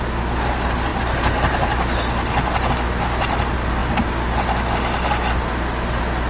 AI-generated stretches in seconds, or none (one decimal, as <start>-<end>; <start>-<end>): 0.9-2.7; 3.8-5.1